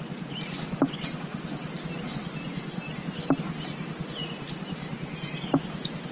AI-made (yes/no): no